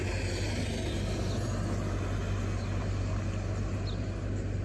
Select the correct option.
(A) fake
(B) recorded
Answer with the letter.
B